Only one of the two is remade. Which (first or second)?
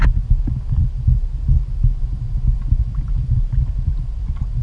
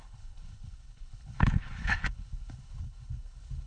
second